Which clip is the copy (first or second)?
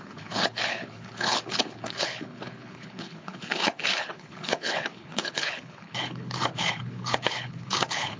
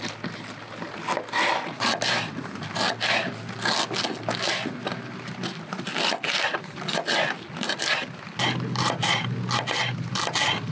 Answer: first